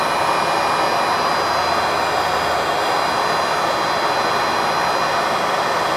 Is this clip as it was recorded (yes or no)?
yes